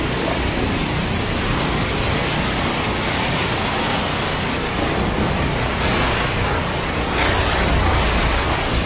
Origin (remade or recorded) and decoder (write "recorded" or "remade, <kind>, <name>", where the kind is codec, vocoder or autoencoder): recorded